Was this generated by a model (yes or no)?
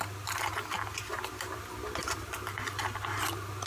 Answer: no